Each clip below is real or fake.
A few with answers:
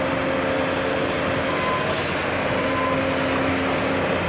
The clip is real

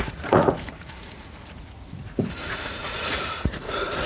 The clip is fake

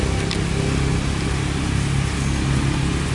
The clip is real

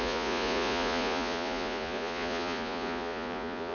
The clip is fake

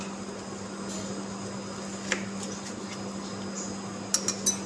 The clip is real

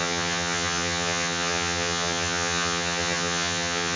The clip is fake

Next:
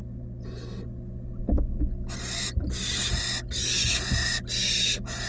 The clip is real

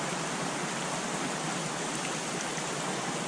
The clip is real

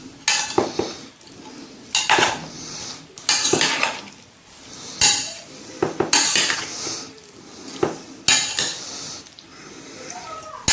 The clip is real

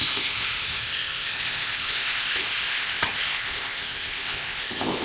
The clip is fake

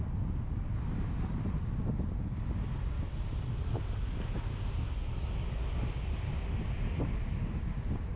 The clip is real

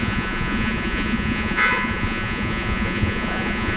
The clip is fake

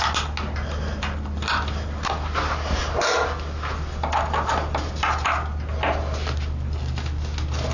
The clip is real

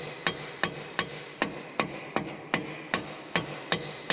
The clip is real